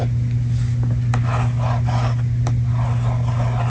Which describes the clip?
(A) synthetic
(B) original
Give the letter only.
B